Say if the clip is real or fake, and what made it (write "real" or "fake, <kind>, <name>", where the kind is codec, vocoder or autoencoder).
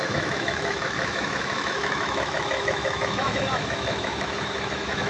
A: fake, autoencoder, DAC-VAE